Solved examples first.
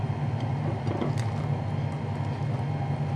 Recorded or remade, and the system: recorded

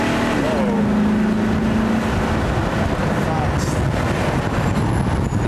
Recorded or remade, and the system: recorded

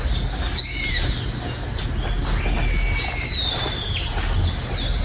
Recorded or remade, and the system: recorded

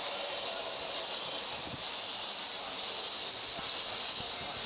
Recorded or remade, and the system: remade, vocoder, BigVGAN v2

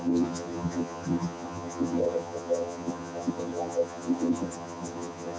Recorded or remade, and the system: remade, vocoder, HiFi-GAN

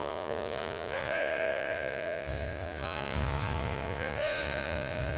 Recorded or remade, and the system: remade, vocoder, Vocos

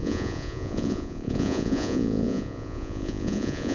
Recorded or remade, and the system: remade, vocoder, Vocos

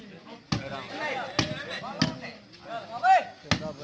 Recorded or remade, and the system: recorded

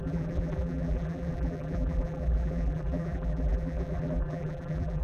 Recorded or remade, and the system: remade, vocoder, BigVGAN v2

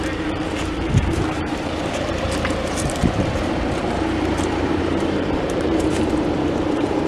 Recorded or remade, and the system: remade, vocoder, BigVGAN v2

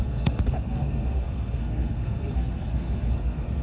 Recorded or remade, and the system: remade, codec, SNAC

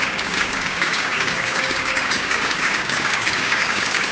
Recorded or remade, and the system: remade, codec, DAC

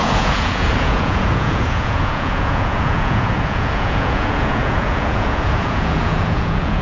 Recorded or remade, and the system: remade, vocoder, Vocos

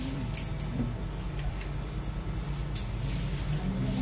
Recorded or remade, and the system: recorded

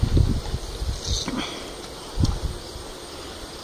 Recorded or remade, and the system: recorded